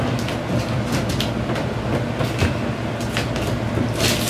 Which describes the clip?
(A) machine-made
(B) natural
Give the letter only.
B